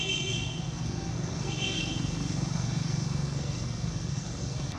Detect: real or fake fake